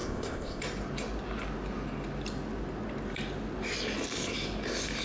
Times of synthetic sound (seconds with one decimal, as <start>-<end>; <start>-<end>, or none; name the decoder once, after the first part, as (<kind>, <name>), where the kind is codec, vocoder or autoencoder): 0.0-0.6 (codec, ZipCodec)